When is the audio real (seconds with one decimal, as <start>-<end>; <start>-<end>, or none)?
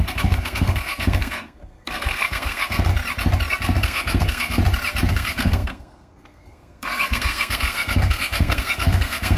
2.9-3.5; 4.6-5.1